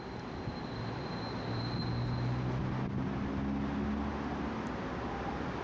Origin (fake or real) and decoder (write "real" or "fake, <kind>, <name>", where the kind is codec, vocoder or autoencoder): real